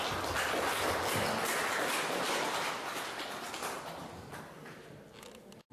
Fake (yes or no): no